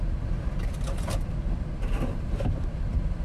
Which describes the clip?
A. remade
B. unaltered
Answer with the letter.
A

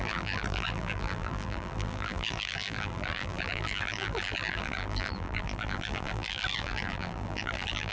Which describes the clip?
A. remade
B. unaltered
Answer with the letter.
A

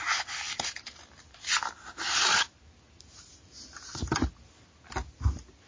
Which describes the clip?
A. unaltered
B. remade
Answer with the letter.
A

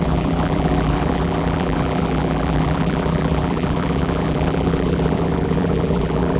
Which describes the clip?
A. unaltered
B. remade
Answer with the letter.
B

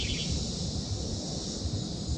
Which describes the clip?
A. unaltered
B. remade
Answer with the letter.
A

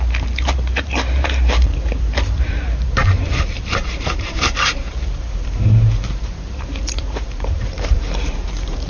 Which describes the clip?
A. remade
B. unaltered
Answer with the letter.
A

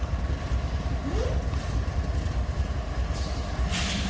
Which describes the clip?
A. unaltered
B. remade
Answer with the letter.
A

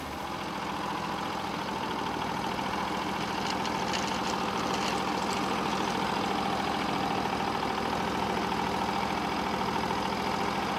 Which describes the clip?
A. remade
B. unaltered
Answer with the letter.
B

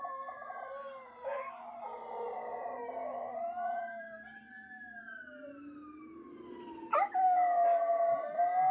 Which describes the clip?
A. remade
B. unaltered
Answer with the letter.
B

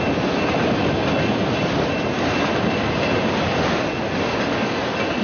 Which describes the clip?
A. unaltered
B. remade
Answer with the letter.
A